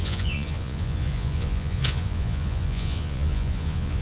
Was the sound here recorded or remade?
remade